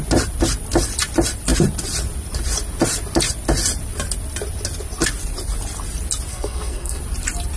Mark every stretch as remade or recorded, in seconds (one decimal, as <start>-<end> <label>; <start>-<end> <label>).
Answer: 0.0-6.3 recorded; 6.3-7.0 remade; 7.0-7.6 recorded